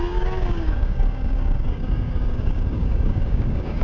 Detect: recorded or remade remade